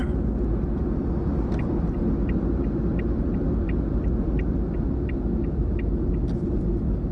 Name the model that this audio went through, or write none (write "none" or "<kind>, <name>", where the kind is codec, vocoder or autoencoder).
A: none